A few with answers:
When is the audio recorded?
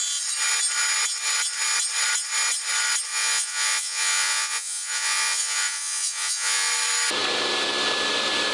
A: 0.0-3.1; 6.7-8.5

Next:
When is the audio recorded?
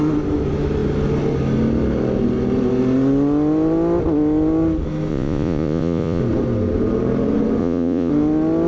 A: 0.0-5.1; 6.2-7.6; 8.1-8.7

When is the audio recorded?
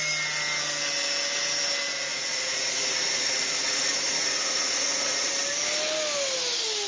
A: 0.0-2.1; 5.3-6.9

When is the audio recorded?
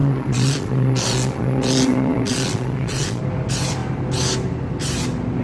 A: 3.2-5.4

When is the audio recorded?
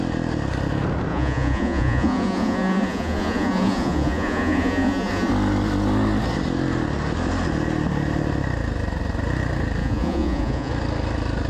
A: 0.0-1.1; 5.3-9.8; 10.7-11.5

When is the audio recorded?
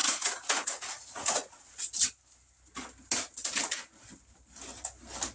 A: 1.9-5.3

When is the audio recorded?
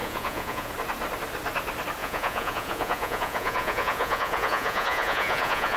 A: 0.7-2.0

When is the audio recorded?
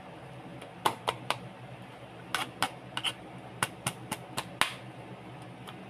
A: 0.0-5.9